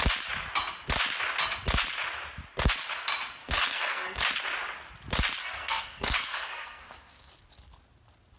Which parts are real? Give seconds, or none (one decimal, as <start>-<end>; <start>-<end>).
0.0-3.4; 4.2-5.4; 7.3-8.4